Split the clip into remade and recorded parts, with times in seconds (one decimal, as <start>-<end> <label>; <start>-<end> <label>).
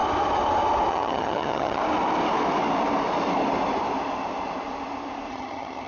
0.0-0.9 recorded; 0.9-1.8 remade; 1.8-5.3 recorded; 5.3-5.9 remade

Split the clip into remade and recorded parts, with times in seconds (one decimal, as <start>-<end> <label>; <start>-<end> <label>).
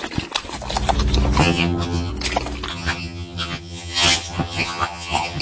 0.0-1.4 recorded; 1.4-2.1 remade; 2.1-2.7 recorded; 2.7-5.4 remade